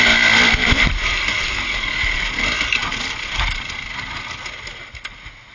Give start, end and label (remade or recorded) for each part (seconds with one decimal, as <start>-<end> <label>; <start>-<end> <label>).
0.0-5.5 recorded